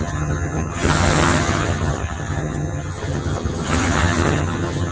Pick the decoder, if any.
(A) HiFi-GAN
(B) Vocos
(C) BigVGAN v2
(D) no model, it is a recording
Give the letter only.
A